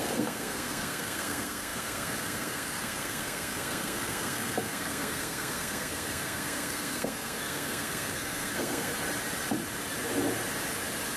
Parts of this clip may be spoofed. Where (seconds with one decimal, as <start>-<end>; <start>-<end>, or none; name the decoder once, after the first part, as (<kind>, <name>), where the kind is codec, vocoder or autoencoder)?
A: 0.0-8.9 (codec, SNAC)